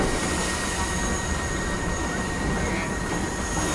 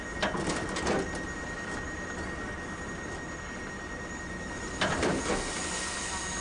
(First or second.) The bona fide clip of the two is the second